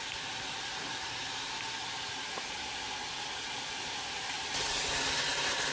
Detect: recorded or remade recorded